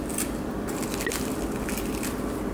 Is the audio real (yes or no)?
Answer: yes